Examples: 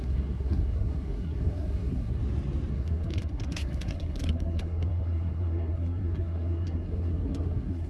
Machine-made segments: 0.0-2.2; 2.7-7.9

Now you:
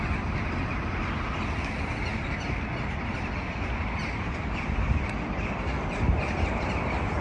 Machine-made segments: none

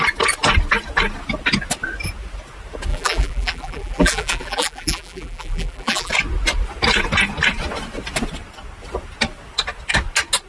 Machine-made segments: 2.9-6.1

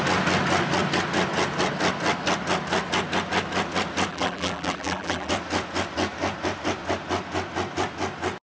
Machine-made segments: 4.1-5.3

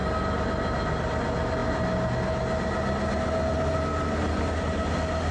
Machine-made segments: none

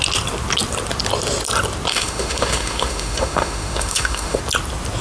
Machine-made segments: 1.9-4.4

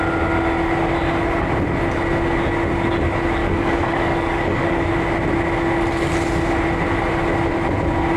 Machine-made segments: 3.4-4.9

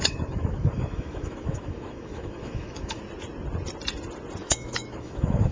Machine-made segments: 0.0-3.0; 4.4-5.5